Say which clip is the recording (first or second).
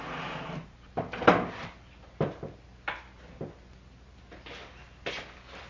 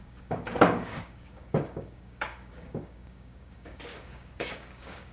first